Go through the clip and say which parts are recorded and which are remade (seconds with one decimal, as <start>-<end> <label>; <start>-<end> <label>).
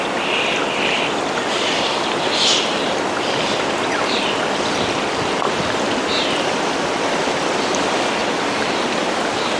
0.0-1.9 recorded; 1.9-2.9 remade; 2.9-8.2 recorded; 8.2-9.1 remade; 9.1-9.6 recorded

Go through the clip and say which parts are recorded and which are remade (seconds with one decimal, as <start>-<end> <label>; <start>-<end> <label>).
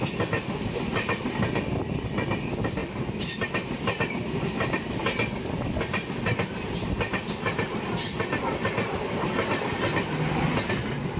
0.0-11.2 recorded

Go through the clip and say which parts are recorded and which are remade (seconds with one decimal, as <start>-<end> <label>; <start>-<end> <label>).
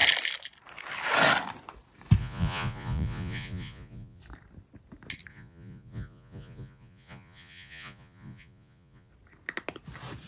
0.0-2.2 recorded; 2.2-4.2 remade; 4.2-5.3 recorded; 5.3-9.1 remade; 9.1-10.3 recorded